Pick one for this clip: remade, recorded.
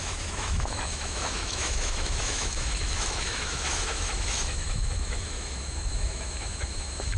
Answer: remade